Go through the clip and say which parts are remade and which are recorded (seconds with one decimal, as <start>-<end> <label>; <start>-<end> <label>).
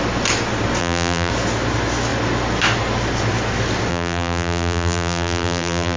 0.0-0.8 recorded; 0.8-1.3 remade; 1.3-3.9 recorded; 3.9-6.0 remade